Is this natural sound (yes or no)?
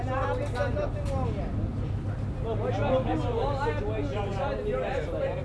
yes